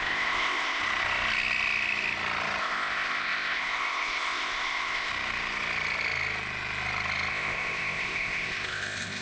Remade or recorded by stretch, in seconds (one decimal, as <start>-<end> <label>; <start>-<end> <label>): 0.0-0.8 remade; 0.8-2.6 recorded; 2.6-5.1 remade; 5.1-7.3 recorded; 7.3-9.2 remade